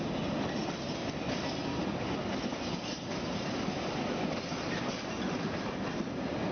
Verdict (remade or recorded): recorded